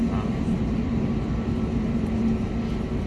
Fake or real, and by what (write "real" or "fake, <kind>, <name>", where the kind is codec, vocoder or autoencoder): real